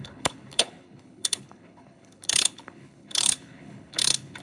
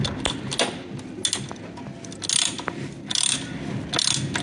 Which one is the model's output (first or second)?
first